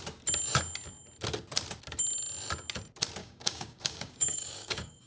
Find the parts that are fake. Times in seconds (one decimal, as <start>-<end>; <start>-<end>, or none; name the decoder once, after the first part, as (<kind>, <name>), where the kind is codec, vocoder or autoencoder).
3.2-5.1 (codec, DAC)